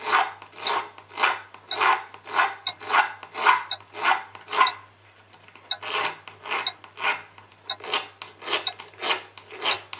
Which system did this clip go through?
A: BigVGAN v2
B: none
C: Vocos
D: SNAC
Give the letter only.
B